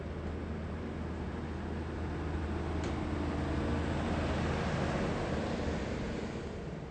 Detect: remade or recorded recorded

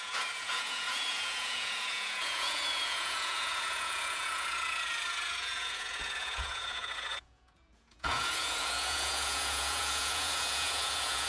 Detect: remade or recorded remade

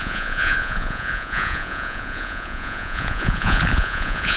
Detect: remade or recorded remade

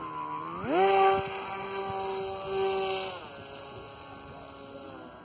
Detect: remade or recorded recorded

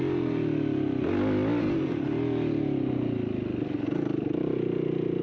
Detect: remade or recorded recorded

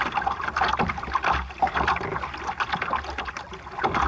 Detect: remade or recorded recorded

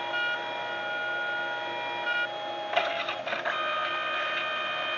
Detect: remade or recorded recorded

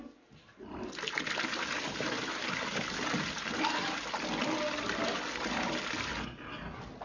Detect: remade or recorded recorded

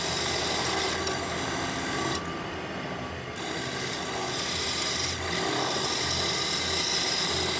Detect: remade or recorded recorded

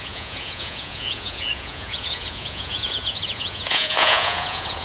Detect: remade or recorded remade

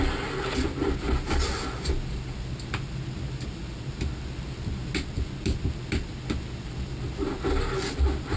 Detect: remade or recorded recorded